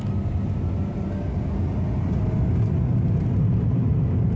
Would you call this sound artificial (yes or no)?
no